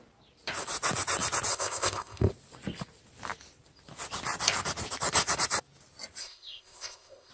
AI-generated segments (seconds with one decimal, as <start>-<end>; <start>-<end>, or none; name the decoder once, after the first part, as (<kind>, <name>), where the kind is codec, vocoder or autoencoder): 1.5-2.3 (codec, ZipCodec); 6.2-7.3